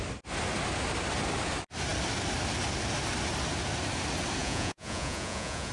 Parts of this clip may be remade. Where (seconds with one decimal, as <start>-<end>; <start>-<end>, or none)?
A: 4.4-5.7